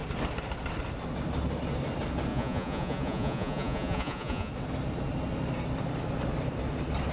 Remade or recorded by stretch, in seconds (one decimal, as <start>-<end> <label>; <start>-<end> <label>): 0.0-2.3 recorded; 2.3-4.5 remade; 4.5-7.1 recorded